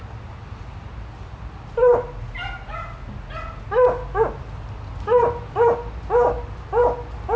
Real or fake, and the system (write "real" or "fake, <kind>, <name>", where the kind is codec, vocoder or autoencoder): real